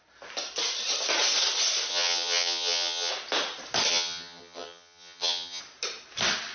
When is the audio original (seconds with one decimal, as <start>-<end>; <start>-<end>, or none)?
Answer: 0.0-1.9; 3.1-3.9; 5.6-6.5

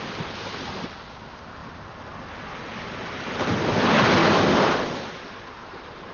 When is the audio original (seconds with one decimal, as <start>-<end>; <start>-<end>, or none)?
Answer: 0.0-1.6; 3.7-4.2; 5.3-6.1

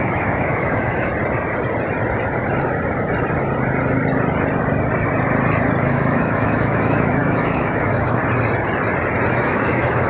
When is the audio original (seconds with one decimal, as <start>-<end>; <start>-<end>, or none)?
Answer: 1.1-5.8; 8.2-9.3

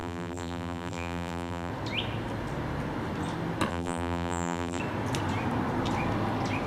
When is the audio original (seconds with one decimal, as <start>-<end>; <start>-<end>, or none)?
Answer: 1.7-3.7; 4.8-6.7

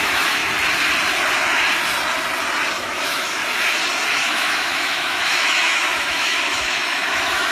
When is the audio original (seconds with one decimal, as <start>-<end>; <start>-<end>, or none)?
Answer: 0.4-2.8; 3.4-4.1

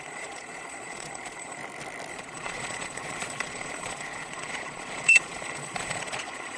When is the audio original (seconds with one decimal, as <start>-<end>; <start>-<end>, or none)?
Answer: 1.6-2.1

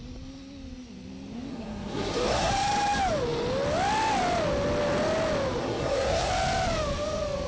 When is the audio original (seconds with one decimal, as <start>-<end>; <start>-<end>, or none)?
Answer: 0.0-1.5; 2.5-5.6; 6.3-7.5